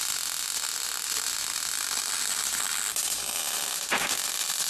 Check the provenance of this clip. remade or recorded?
recorded